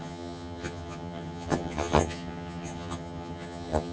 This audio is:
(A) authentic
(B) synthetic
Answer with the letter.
B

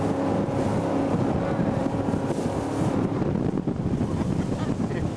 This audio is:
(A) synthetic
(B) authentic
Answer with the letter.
B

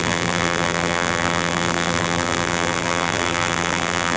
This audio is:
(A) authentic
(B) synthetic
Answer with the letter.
B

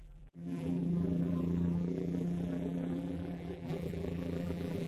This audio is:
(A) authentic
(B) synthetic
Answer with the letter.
B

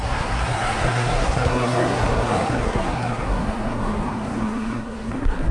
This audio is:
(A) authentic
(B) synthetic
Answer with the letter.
B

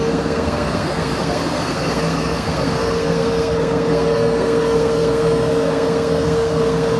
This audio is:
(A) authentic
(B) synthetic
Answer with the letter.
B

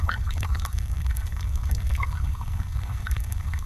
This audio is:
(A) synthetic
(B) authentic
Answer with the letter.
A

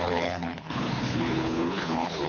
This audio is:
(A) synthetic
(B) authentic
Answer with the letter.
A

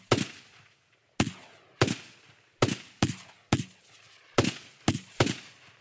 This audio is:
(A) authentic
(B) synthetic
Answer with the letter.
A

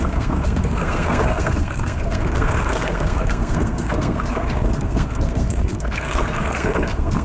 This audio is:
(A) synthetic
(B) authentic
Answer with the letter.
A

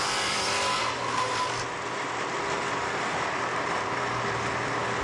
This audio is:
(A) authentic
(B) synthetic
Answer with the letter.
B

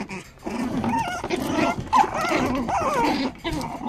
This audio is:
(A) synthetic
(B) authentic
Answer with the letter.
B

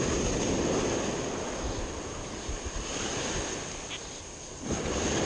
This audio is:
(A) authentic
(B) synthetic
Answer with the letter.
A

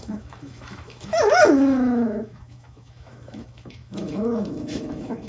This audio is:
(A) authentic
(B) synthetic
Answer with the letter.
B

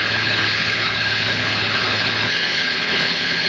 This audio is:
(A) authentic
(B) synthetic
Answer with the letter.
B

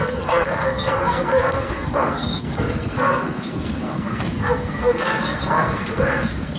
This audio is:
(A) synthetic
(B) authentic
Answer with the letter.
A